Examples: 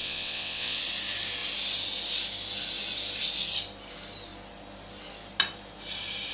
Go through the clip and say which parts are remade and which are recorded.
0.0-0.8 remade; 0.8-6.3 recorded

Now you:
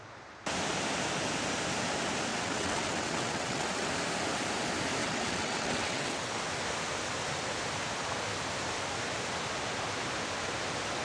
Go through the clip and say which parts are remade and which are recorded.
0.0-2.3 recorded; 2.3-3.9 remade; 3.9-5.0 recorded; 5.0-6.3 remade; 6.3-11.0 recorded

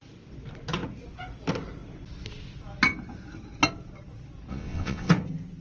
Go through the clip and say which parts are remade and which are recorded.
0.0-4.5 recorded; 4.5-5.1 remade; 5.1-5.6 recorded

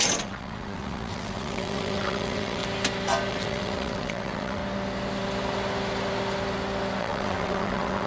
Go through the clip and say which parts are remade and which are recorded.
0.0-2.6 remade; 2.6-3.3 recorded; 3.3-4.6 remade; 4.6-7.0 recorded; 7.0-8.1 remade

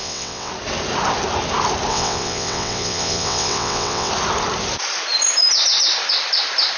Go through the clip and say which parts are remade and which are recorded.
0.0-0.5 remade; 0.5-1.9 recorded; 1.9-4.1 remade; 4.1-6.8 recorded

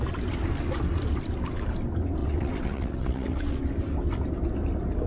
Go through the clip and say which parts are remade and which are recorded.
0.0-2.2 recorded; 2.2-3.6 remade; 3.6-5.1 recorded

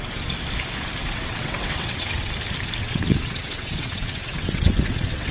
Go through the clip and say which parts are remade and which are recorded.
0.0-1.0 recorded; 1.0-2.3 remade; 2.3-2.8 recorded; 2.8-5.3 remade

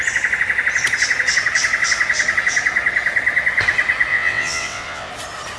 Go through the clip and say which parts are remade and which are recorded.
0.0-4.1 recorded; 4.1-5.1 remade; 5.1-5.6 recorded